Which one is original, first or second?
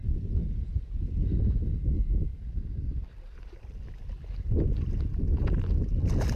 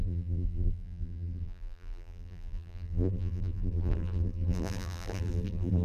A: first